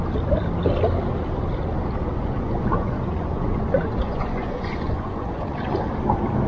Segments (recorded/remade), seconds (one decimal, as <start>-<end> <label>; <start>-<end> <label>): 0.0-2.1 recorded; 2.1-5.8 remade; 5.8-6.5 recorded